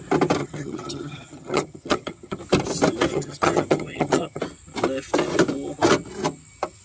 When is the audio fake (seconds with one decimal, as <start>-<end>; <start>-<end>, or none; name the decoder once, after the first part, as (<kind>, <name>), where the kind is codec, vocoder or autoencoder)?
0.4-2.4 (vocoder, HiFi-GAN); 3.1-4.4